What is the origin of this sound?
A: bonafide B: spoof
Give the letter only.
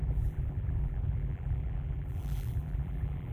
B